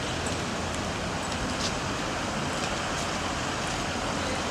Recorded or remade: recorded